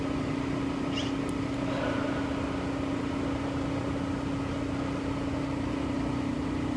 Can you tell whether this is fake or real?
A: real